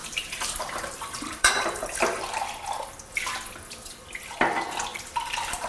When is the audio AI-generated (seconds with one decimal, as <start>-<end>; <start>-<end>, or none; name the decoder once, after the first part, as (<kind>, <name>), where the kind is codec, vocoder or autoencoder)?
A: 0.0-2.5 (vocoder, BigVGAN v2); 4.9-5.7